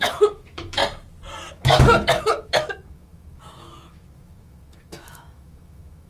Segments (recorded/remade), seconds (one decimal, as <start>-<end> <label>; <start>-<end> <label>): 0.0-0.8 remade; 0.8-1.5 recorded; 1.5-6.1 remade